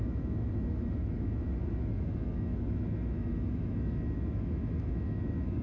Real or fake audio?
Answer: fake